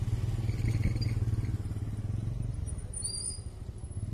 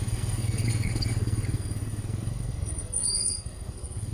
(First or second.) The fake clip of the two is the second